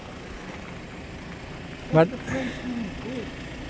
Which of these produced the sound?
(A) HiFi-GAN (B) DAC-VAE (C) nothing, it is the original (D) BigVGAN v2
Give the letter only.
C